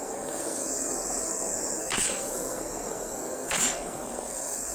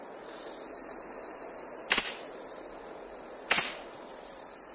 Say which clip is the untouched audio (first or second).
second